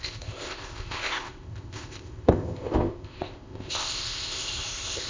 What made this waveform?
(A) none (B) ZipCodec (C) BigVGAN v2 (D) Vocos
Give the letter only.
B